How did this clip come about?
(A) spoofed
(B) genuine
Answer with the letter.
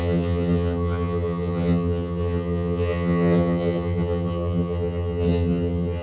A